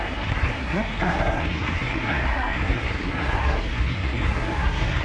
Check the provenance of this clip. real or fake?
fake